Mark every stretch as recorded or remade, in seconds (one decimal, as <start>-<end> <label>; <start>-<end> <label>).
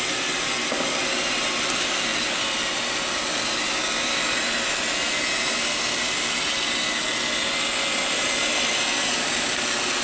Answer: 0.0-2.1 recorded; 2.1-2.7 remade; 2.7-10.0 recorded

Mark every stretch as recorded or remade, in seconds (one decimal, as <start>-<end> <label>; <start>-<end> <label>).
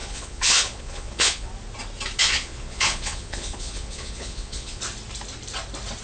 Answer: 0.0-1.5 remade; 1.5-2.2 recorded; 2.2-4.8 remade; 4.8-6.0 recorded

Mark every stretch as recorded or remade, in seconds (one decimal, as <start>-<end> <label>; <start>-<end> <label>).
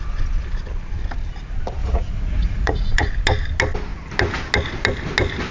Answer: 0.0-1.8 recorded; 1.8-3.1 remade; 3.1-5.5 recorded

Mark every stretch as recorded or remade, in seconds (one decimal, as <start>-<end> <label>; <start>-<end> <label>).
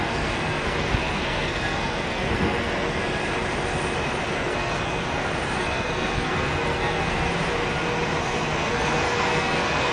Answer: 0.0-3.0 remade; 3.0-4.3 recorded; 4.3-5.0 remade; 5.0-5.6 recorded; 5.6-7.3 remade; 7.3-8.2 recorded; 8.2-9.9 remade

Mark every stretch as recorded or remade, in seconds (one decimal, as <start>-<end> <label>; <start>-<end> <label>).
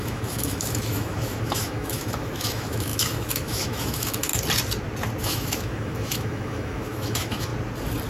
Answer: 0.0-4.3 remade; 4.3-5.2 recorded; 5.2-7.5 remade; 7.5-8.1 recorded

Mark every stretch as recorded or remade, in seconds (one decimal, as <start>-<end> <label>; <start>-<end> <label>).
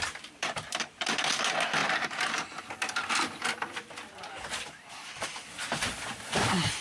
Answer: 0.0-6.8 remade